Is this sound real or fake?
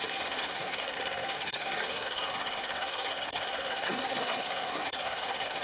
fake